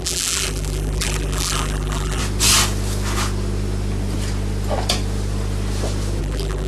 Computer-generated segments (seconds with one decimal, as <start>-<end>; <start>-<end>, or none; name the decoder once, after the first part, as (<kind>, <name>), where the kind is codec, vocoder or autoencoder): 0.0-2.2 (vocoder, BigVGAN v2); 6.2-6.7